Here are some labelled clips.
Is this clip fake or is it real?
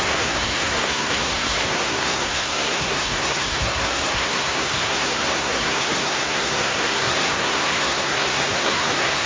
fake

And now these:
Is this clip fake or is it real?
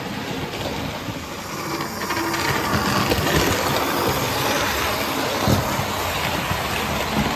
real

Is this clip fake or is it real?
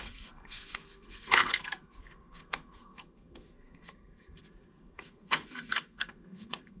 fake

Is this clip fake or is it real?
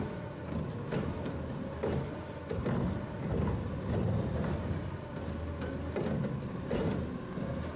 real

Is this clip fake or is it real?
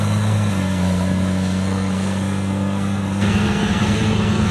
fake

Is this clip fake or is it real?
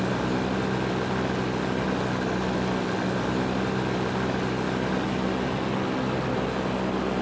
real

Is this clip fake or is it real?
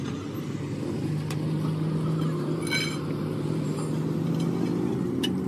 real